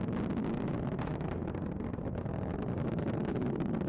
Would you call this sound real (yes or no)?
yes